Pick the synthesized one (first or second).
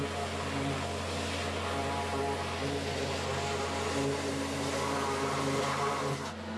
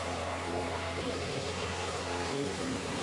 second